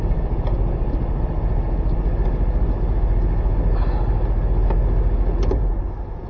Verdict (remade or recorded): recorded